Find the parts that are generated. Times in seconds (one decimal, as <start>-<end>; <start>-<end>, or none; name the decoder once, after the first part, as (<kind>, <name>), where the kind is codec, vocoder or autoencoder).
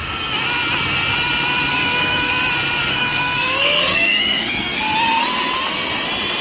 1.7-2.3 (codec, SNAC); 2.9-4.8